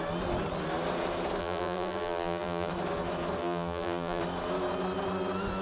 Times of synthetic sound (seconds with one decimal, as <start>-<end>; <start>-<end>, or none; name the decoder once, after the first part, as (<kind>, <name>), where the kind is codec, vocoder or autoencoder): 1.4-2.7 (vocoder, BigVGAN v2); 3.4-4.2

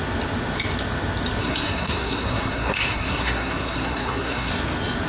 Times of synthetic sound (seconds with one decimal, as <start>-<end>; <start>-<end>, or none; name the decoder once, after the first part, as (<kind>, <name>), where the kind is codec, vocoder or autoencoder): 1.4-4.5 (codec, SNAC)